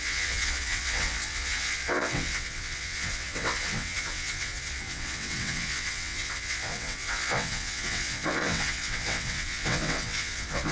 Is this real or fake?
fake